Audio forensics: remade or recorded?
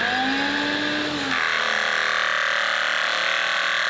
recorded